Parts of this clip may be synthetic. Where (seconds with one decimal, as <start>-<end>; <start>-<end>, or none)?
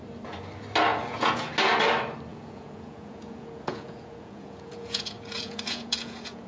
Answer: 0.9-1.5; 2.3-6.5